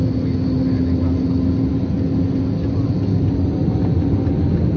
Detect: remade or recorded recorded